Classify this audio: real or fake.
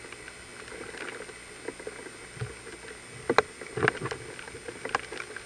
real